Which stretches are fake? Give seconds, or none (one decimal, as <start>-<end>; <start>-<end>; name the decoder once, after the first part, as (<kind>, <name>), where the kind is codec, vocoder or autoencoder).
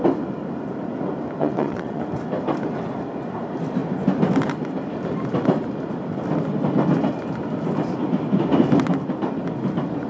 1.4-2.0 (vocoder, WaveNeXt)